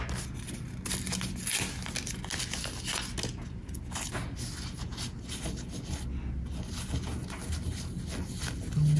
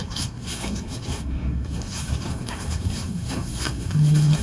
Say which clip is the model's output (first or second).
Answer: second